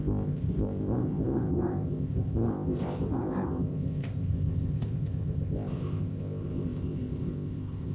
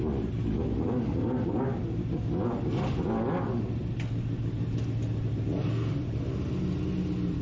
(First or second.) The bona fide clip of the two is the second